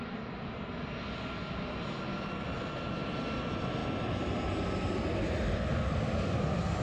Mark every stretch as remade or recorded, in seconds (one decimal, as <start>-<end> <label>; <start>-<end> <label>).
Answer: 0.0-6.8 recorded